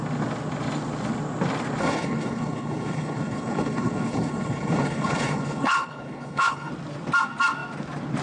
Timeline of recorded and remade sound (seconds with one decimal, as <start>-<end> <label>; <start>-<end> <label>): 0.0-1.8 recorded; 1.8-6.7 remade; 6.7-8.2 recorded